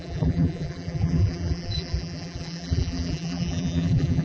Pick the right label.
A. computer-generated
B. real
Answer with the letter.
A